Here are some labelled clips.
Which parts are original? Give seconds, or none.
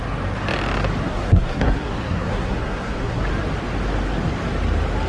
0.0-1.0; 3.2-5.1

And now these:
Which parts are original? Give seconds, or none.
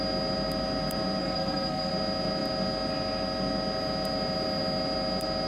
0.0-1.2; 1.9-5.5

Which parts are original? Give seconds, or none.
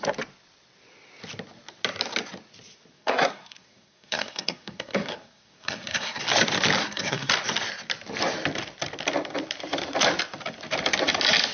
0.0-2.9; 6.2-6.8; 7.3-11.5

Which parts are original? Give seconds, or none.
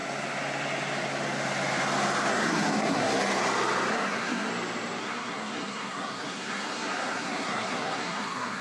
0.0-2.3; 3.1-3.9; 4.5-5.0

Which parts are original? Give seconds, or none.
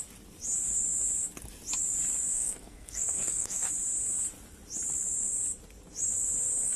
0.0-2.3; 3.7-6.8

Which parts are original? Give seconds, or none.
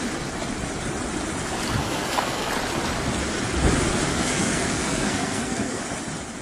0.0-1.8; 2.5-4.1; 5.8-6.4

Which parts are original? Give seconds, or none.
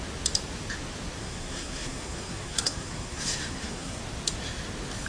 0.0-1.2; 4.0-5.1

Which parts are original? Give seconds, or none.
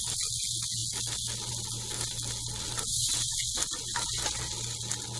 0.0-5.2